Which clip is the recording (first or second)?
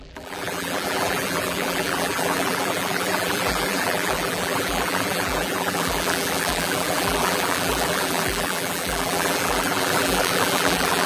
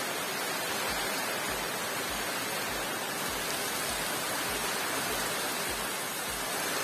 second